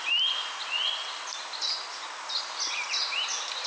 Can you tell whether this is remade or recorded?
recorded